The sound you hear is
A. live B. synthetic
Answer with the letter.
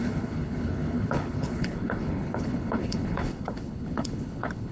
B